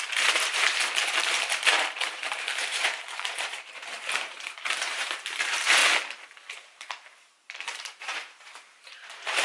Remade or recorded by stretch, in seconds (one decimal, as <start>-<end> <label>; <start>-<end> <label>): 0.0-5.8 remade; 5.8-6.5 recorded; 6.5-9.4 remade